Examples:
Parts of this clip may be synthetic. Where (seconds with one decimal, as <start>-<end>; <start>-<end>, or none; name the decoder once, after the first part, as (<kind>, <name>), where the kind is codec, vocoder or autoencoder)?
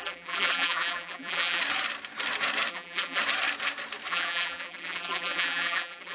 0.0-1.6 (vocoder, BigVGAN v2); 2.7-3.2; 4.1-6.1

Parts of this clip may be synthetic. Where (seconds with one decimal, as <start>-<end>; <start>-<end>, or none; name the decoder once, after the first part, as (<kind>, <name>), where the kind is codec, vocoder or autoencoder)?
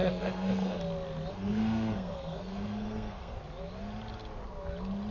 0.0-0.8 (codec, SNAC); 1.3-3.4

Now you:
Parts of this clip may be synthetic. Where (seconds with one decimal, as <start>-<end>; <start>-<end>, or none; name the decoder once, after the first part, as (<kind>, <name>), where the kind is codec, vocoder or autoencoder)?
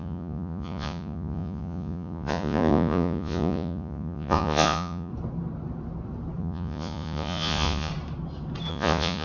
0.0-5.1 (vocoder, Vocos); 6.4-7.9; 8.7-9.2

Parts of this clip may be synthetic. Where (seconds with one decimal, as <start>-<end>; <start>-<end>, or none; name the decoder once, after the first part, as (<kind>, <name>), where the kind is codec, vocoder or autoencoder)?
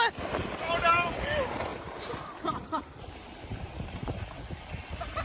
1.7-4.2 (vocoder, BigVGAN v2)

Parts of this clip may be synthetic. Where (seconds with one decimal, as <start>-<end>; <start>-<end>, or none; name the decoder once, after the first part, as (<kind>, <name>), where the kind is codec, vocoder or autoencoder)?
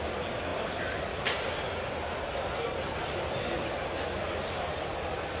none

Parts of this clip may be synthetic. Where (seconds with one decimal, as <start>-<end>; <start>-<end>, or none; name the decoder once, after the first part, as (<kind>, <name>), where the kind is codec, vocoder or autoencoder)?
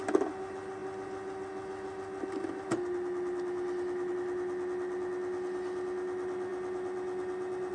none